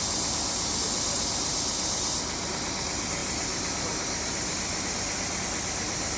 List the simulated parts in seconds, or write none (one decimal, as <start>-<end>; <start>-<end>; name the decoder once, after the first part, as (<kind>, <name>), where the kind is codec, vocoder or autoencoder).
3.2-5.4 (vocoder, BigVGAN v2)